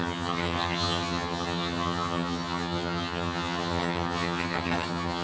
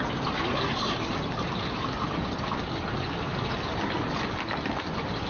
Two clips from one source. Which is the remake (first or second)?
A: first